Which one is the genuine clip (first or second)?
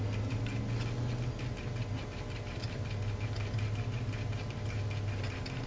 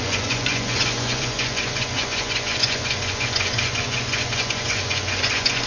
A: first